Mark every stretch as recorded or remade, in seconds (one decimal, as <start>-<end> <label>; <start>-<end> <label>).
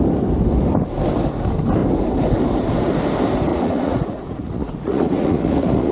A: 0.0-3.5 recorded; 3.5-5.9 remade